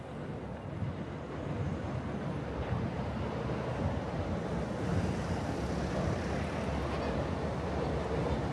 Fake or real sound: real